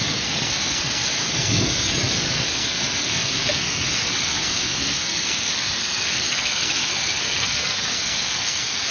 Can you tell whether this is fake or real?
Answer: fake